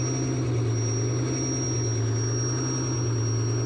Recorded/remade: recorded